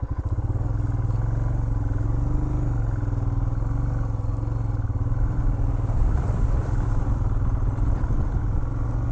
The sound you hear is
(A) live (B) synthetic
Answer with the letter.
A